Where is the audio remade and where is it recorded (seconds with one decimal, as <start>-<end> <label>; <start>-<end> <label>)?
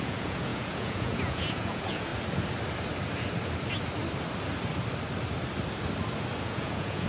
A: 0.0-2.1 remade; 2.1-6.4 recorded; 6.4-7.1 remade